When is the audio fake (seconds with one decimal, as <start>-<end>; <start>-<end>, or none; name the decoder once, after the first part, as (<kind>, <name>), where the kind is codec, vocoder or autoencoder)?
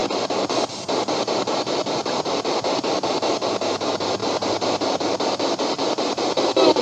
4.2-6.8 (vocoder, BigVGAN v2)